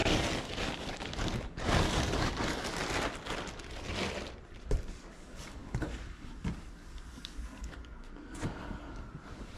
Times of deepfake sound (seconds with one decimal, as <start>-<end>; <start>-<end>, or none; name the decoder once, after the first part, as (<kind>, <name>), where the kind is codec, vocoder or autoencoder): 0.0-2.8 (codec, DAC); 4.8-9.6